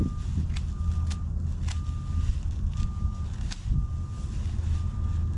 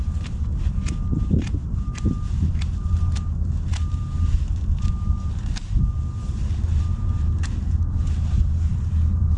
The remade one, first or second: second